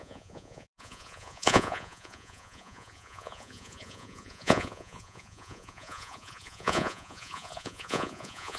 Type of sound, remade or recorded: remade